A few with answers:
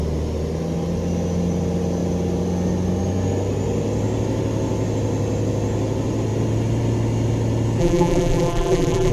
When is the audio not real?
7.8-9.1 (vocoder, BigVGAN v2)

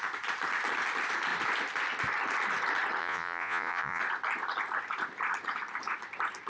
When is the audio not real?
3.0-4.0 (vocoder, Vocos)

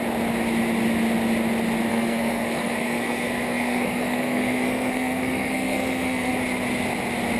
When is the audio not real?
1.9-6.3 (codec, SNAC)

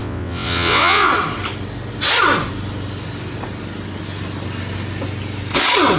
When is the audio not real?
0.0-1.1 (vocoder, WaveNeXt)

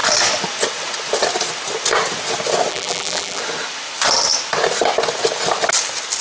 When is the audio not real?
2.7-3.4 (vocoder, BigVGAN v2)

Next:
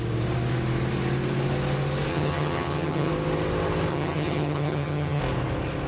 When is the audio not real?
2.1-3.1 (vocoder, HiFi-GAN); 3.9-5.2